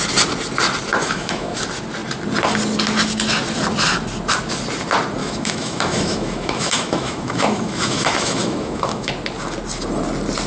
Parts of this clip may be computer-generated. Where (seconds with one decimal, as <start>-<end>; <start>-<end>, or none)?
1.0-1.6; 5.2-9.1